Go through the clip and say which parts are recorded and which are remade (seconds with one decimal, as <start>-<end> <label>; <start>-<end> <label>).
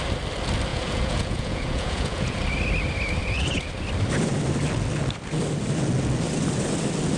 0.0-0.7 recorded; 0.7-2.4 remade; 2.4-3.2 recorded; 3.2-3.7 remade; 3.7-7.2 recorded